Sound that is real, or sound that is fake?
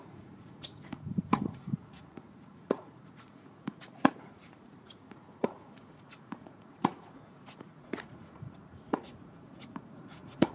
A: fake